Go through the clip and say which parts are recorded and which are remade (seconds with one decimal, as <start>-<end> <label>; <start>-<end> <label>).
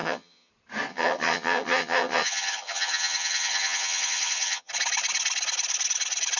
0.0-0.5 remade; 0.5-0.9 recorded; 0.9-4.7 remade; 4.7-6.4 recorded